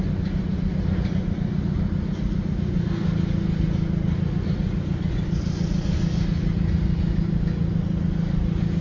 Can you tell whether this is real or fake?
real